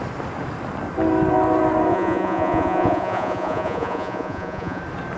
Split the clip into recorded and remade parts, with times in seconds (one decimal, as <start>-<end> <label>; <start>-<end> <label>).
0.0-1.9 recorded; 1.9-4.8 remade; 4.8-5.2 recorded